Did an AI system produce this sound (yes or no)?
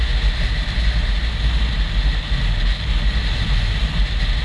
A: no